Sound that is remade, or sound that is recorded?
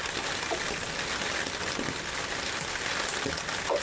recorded